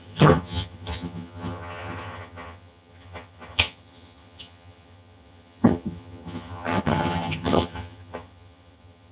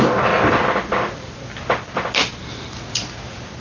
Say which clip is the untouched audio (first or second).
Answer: second